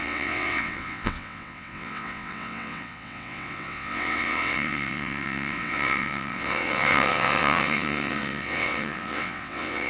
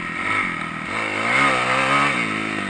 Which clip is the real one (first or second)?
second